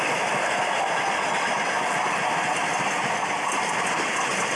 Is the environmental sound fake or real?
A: real